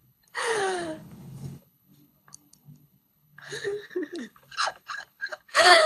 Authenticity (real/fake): fake